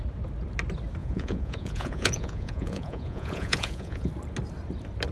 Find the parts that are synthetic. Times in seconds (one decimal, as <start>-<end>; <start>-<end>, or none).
1.0-4.1

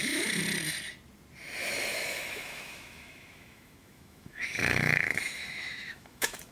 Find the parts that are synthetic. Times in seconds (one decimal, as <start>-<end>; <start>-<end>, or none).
0.0-0.4; 1.9-6.5

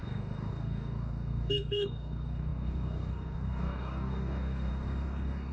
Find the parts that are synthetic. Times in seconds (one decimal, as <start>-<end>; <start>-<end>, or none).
0.0-5.5

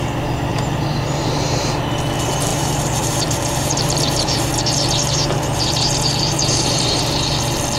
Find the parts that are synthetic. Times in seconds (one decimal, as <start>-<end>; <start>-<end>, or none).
0.5-1.8; 2.5-7.0